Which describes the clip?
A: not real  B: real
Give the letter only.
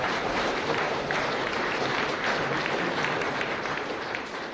A